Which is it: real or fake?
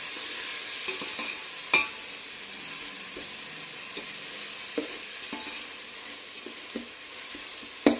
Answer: real